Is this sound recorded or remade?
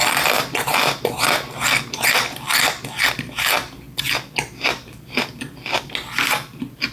recorded